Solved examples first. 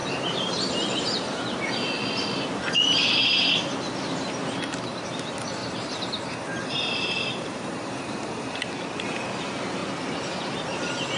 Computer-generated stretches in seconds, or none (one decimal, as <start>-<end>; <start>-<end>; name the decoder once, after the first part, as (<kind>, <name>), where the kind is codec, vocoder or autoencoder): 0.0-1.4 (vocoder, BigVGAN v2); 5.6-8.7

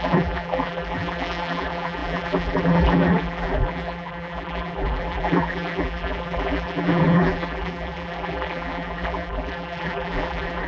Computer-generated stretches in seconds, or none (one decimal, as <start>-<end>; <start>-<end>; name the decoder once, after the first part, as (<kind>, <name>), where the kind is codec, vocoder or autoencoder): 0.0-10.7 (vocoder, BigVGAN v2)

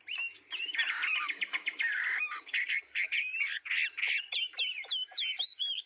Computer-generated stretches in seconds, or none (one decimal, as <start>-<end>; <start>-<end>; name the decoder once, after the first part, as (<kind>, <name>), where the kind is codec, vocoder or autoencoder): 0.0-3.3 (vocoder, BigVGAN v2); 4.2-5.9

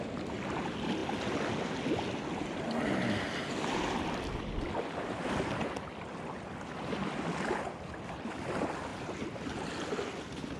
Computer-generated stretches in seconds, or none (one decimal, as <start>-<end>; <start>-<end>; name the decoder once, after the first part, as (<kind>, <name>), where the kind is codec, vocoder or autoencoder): 8.9-9.7 (vocoder, BigVGAN v2)